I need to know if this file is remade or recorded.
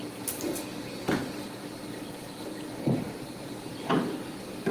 remade